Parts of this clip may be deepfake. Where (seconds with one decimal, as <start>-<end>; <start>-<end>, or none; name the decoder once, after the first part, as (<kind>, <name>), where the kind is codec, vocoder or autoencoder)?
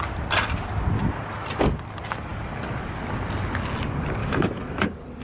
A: 4.2-4.7 (autoencoder, DAC-VAE)